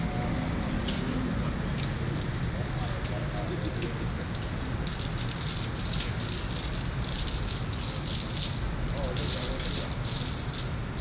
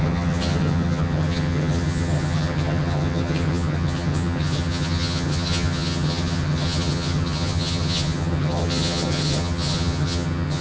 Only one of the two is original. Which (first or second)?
first